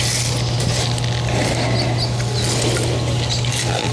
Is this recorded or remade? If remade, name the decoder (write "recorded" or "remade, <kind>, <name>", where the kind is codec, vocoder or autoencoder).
recorded